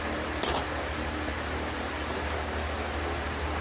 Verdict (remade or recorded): recorded